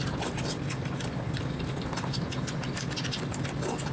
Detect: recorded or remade recorded